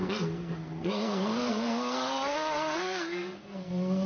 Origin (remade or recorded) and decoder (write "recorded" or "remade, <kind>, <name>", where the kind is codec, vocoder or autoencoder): remade, codec, SNAC